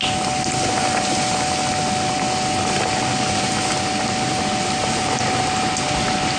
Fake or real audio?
real